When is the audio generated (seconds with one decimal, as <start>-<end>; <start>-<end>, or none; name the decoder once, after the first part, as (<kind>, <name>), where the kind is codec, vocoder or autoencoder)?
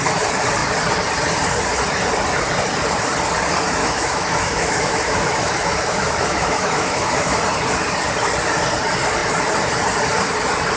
3.8-7.4 (autoencoder, DAC-VAE)